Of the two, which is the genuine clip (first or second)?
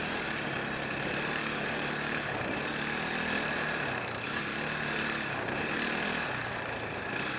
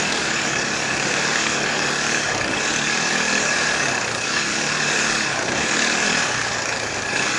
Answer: first